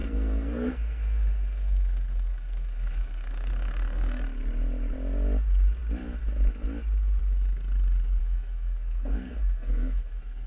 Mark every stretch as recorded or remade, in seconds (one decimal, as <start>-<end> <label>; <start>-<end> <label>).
0.0-4.2 remade; 4.2-8.2 recorded; 8.2-10.5 remade